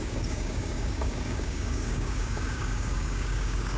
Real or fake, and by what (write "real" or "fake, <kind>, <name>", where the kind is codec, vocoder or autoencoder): fake, codec, DAC